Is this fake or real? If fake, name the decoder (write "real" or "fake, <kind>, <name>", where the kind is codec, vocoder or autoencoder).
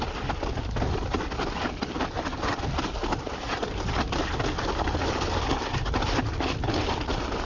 real